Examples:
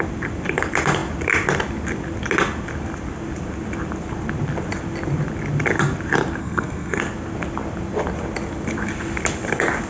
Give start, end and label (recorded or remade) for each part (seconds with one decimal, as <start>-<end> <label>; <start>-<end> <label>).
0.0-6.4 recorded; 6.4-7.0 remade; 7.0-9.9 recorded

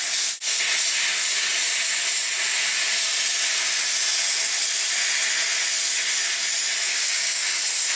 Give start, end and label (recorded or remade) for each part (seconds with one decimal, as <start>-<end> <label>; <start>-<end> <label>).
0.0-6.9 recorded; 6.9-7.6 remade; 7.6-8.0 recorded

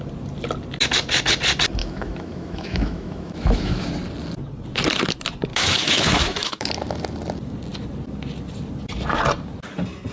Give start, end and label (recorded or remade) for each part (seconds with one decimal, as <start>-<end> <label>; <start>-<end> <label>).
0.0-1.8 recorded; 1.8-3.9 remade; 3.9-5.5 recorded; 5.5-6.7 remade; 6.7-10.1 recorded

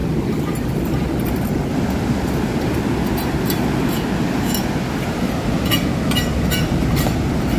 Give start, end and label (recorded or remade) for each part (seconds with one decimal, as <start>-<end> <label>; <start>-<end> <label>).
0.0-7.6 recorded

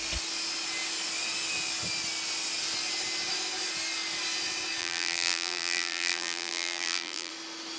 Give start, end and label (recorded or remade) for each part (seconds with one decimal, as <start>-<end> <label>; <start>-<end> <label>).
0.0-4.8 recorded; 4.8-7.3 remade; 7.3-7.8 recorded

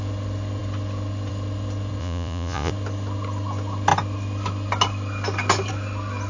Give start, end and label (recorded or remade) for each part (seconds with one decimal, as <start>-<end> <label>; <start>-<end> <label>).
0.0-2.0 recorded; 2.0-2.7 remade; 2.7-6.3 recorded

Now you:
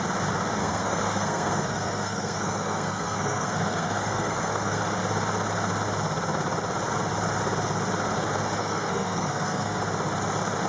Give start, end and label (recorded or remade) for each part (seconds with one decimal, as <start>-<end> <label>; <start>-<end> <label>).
0.0-0.6 recorded; 0.6-4.8 remade; 4.8-8.6 recorded; 8.6-9.8 remade; 9.8-10.7 recorded